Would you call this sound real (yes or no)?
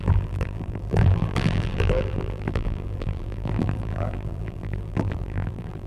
no